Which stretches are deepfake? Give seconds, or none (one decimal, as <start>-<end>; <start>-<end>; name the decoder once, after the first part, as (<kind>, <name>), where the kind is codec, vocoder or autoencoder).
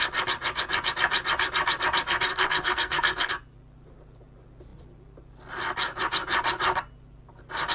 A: 2.3-3.3 (codec, SNAC)